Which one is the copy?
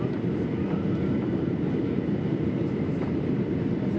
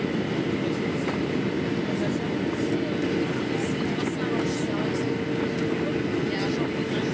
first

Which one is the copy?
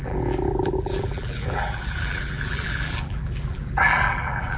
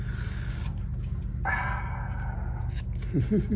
first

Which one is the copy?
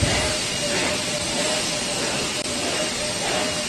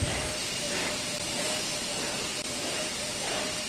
second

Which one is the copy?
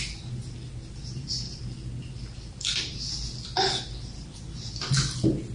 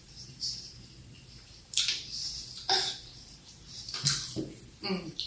second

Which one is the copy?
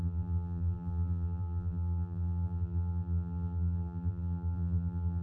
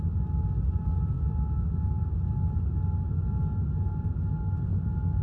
first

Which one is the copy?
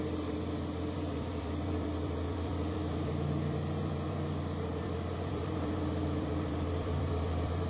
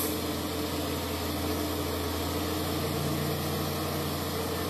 first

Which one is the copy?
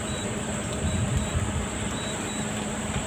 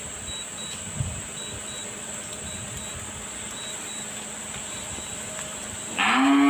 first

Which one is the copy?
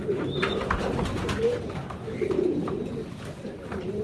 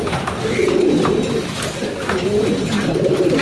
first